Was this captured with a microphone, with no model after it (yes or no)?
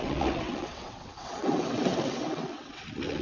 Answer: no